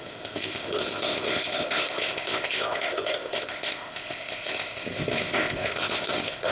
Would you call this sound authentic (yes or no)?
no